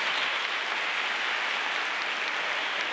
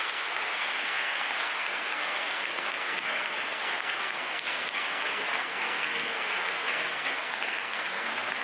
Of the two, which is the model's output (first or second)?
second